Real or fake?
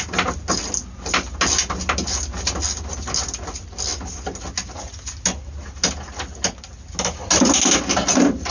real